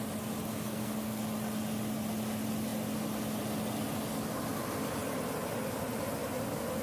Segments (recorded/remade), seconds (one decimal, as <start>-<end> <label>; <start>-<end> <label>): 0.0-0.5 recorded; 0.5-1.2 remade; 1.2-6.8 recorded